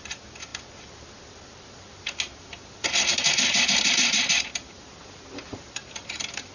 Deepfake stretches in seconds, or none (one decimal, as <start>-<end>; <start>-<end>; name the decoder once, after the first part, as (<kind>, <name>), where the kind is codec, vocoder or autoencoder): none